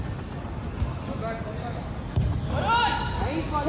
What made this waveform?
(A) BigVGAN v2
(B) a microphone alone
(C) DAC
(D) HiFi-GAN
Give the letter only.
B